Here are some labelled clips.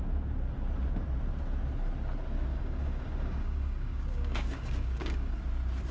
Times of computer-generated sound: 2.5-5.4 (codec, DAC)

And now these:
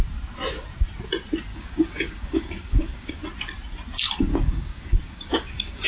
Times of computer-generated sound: 1.5-3.2 (codec, DAC); 4.3-5.9

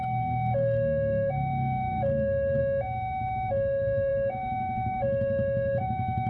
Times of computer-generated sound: 0.0-2.6 (codec, DAC); 3.5-6.3

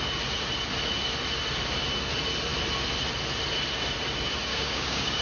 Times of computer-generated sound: 4.5-5.2 (codec, DAC)

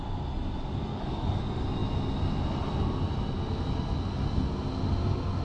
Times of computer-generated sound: 0.9-1.4 (codec, DAC)

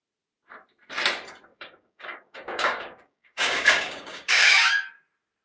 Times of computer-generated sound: 1.5-4.7 (codec, DAC)

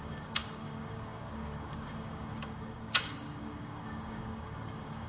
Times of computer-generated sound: 0.0-5.1 (codec, DAC)

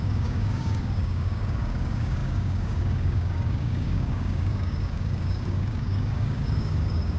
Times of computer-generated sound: 0.0-7.2 (codec, DAC)